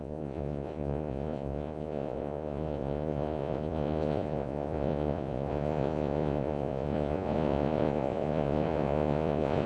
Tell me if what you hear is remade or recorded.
remade